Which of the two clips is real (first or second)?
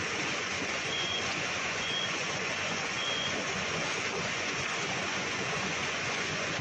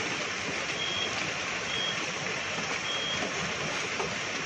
second